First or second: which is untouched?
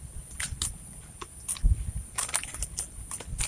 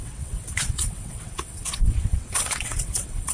first